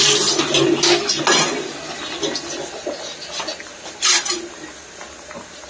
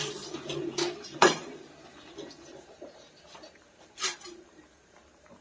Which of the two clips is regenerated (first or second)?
second